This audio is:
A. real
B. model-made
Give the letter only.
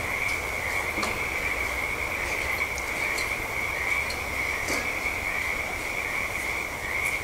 A